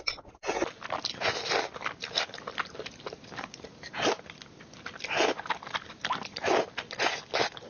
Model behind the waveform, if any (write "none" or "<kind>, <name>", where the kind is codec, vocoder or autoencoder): none